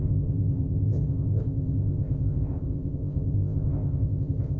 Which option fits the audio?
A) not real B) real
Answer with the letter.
A